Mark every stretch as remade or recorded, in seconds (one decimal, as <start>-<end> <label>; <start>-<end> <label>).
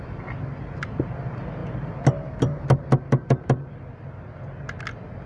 0.0-5.3 recorded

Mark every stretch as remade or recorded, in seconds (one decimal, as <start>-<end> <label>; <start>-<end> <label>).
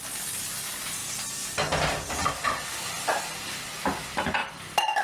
0.0-5.0 recorded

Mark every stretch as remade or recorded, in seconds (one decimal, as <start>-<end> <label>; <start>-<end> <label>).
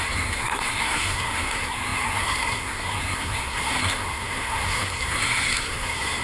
0.0-6.2 remade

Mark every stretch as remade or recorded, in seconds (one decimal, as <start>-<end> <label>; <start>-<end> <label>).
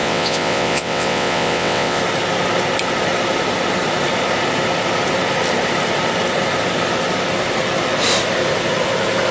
0.0-2.0 remade; 2.0-9.3 recorded